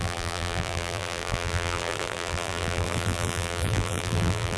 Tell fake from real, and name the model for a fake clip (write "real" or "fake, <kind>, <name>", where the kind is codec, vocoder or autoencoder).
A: fake, vocoder, BigVGAN v2